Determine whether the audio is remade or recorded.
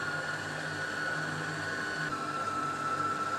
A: recorded